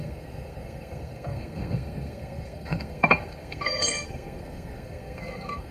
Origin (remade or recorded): remade